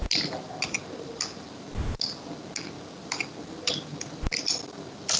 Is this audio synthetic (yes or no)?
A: no